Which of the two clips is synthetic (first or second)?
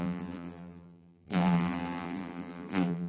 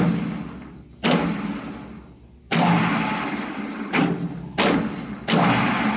first